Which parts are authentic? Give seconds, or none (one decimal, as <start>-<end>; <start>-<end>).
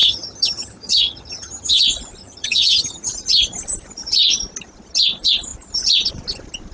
1.8-2.2; 3.1-6.7